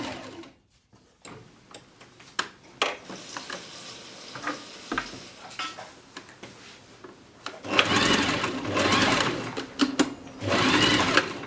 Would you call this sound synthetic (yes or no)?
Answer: no